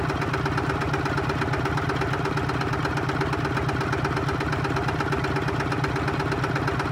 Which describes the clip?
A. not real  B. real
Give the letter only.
B